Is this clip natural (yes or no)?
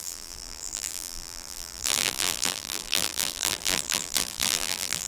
no